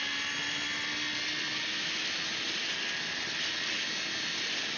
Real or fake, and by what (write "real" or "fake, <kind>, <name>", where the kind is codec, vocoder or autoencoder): real